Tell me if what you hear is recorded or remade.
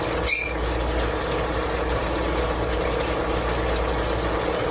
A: recorded